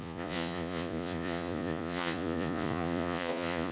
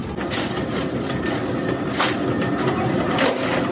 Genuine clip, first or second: second